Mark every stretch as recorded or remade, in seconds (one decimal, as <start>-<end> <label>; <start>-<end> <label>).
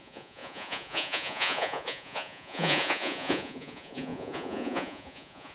0.0-5.5 remade